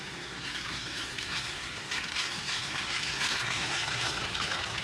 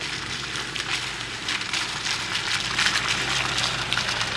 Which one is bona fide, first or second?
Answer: second